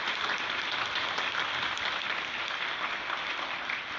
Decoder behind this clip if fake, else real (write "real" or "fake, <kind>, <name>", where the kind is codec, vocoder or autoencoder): real